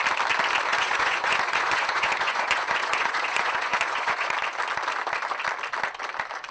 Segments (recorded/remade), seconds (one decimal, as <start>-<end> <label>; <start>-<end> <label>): 0.0-0.7 recorded; 0.7-4.3 remade; 4.3-6.5 recorded